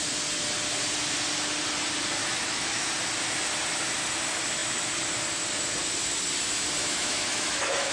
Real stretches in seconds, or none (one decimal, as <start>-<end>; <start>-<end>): 0.0-2.2; 2.9-6.8